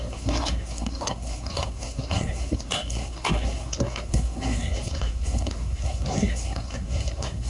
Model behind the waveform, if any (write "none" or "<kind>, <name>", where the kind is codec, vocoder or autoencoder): codec, SNAC